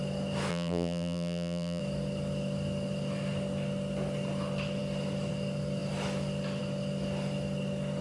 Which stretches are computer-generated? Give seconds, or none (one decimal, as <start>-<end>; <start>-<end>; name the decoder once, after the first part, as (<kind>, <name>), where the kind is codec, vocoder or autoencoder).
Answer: 0.5-1.8 (vocoder, BigVGAN v2)